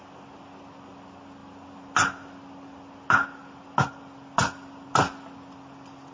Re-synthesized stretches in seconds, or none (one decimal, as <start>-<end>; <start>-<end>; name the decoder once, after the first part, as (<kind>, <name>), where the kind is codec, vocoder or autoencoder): none